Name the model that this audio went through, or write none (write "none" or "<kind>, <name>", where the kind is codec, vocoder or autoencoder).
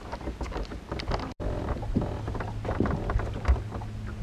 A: none